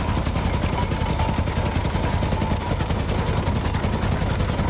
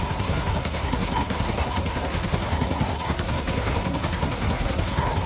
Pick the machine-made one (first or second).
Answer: second